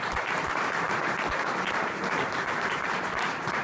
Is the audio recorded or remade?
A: remade